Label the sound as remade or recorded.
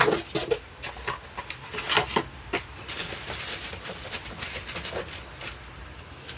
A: recorded